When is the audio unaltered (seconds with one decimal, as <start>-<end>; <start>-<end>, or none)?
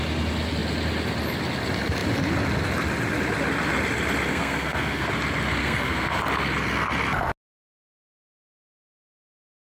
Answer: 0.0-4.3; 5.1-5.6; 6.2-9.6